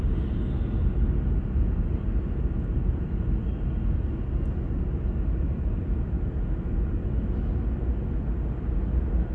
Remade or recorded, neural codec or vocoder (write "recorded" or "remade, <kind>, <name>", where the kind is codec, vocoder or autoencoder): recorded